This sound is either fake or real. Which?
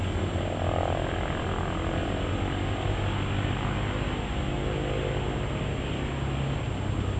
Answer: real